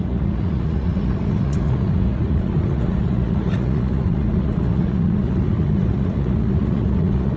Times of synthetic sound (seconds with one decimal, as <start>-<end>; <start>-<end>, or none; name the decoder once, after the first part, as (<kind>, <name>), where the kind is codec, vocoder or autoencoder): 0.0-7.4 (vocoder, Vocos)